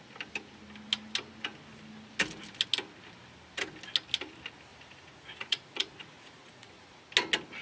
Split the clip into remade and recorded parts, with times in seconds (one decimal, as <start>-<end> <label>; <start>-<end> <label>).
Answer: 0.0-4.7 recorded; 4.7-7.0 remade; 7.0-7.6 recorded